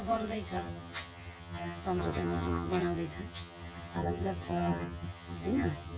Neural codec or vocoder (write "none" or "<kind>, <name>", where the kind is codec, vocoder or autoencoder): vocoder, HiFi-GAN